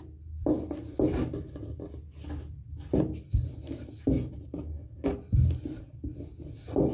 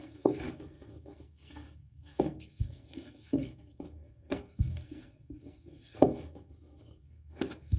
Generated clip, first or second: second